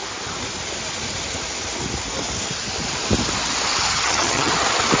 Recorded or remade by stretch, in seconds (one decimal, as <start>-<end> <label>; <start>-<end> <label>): 0.0-3.9 recorded; 3.9-4.5 remade; 4.5-5.0 recorded